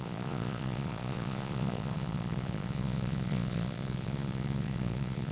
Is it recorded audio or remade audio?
remade